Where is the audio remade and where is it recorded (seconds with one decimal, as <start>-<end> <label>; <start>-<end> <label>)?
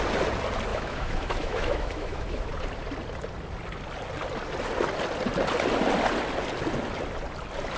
0.0-0.7 recorded; 0.7-2.5 remade; 2.5-7.8 recorded